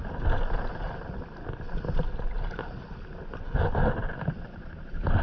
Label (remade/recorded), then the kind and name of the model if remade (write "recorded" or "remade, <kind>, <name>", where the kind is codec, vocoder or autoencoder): recorded